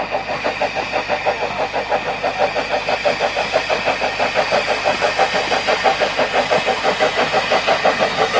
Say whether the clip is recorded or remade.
recorded